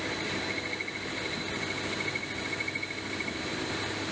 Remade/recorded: recorded